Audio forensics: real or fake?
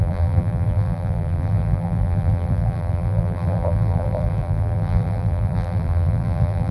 fake